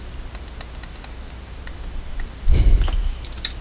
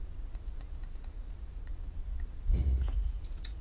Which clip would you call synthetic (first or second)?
second